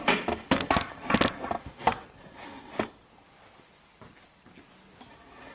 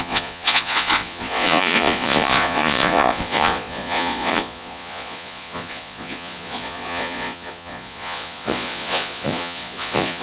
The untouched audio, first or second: first